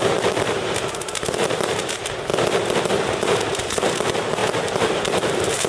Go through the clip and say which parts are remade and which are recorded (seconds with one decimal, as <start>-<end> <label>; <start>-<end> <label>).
0.0-2.3 remade; 2.3-2.8 recorded; 2.8-5.7 remade